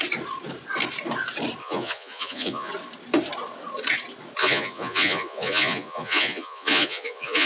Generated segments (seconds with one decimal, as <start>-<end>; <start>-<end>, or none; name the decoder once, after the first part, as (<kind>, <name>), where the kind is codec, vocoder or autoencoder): 1.6-2.7 (vocoder, Vocos); 4.4-7.5